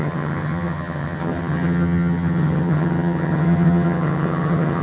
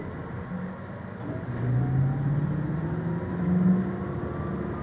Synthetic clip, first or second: first